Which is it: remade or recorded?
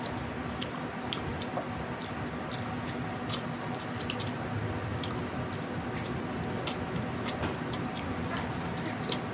remade